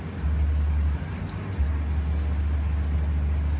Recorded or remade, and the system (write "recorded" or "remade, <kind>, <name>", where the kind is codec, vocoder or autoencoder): recorded